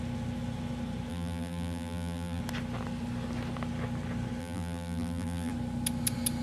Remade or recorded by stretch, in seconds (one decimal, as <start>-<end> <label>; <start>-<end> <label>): 0.0-1.1 recorded; 1.1-2.4 remade; 2.4-4.4 recorded; 4.4-5.5 remade; 5.5-6.4 recorded